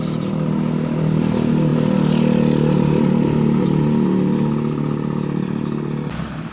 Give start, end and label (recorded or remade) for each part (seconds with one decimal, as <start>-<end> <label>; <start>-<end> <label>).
0.0-6.5 recorded